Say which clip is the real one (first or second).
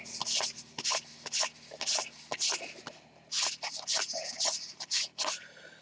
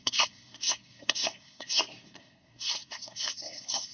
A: first